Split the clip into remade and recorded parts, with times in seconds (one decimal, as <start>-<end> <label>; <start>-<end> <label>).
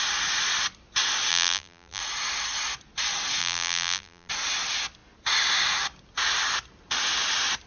0.0-1.3 recorded; 1.3-2.0 remade; 2.0-3.4 recorded; 3.4-4.3 remade; 4.3-7.7 recorded